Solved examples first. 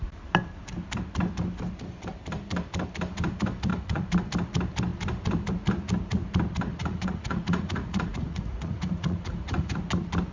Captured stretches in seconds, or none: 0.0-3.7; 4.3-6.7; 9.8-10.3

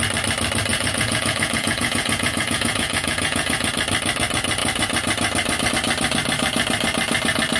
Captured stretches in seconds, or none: 0.0-0.7; 3.7-7.6

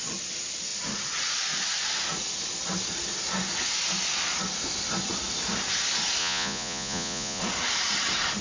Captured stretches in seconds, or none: 0.0-6.2; 7.4-8.4